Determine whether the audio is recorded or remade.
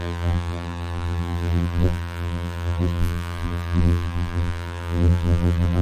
remade